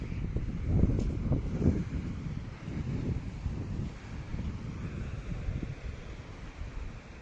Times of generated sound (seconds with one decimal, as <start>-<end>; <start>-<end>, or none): none